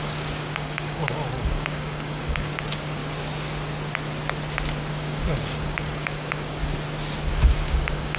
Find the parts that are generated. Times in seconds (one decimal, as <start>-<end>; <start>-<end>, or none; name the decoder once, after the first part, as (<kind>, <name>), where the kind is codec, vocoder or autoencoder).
0.0-3.0 (codec, DAC); 4.9-6.6; 7.3-8.2